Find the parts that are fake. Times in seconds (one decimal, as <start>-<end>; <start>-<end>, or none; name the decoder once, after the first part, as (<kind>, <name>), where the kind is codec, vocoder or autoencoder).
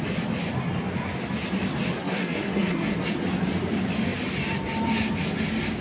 2.0-3.1 (codec, SNAC)